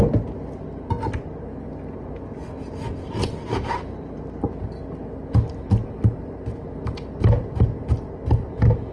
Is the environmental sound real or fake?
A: real